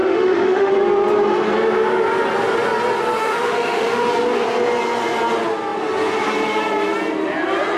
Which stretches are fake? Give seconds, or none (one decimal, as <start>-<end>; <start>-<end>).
0.0-0.7; 3.2-4.1